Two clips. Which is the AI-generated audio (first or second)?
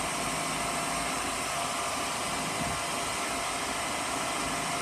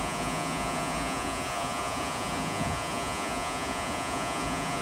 second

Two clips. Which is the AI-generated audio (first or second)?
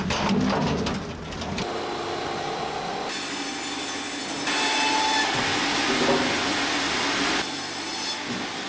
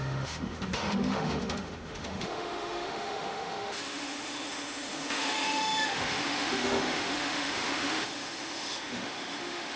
second